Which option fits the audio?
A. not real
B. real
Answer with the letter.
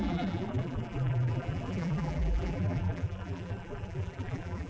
A